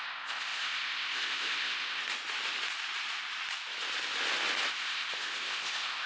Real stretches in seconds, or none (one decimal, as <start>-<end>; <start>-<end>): 2.0-4.7